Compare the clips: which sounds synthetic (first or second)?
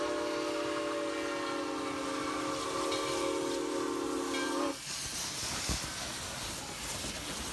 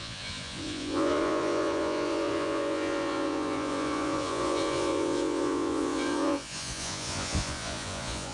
second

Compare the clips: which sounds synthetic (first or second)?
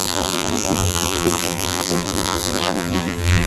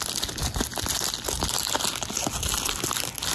first